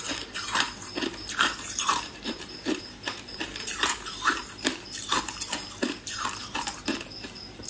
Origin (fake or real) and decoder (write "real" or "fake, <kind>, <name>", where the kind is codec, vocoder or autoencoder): fake, vocoder, BigVGAN v2